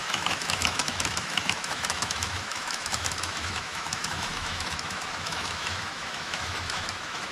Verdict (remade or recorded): remade